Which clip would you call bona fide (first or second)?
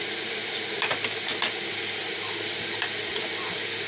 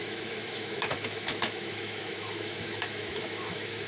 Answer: first